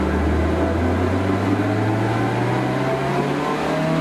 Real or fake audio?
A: real